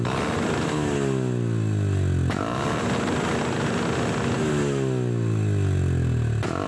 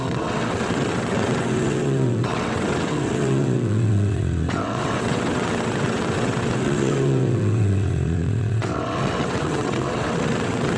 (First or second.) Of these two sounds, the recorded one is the first